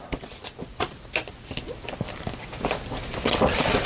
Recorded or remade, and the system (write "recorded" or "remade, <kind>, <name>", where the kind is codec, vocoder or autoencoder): recorded